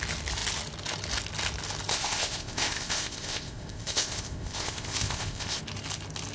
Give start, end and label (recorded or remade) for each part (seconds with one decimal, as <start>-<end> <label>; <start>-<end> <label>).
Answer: 0.0-1.9 recorded; 1.9-5.6 remade; 5.6-6.3 recorded